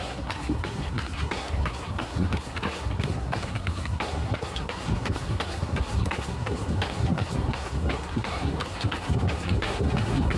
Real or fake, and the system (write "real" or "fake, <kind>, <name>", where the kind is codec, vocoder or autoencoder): fake, codec, SNAC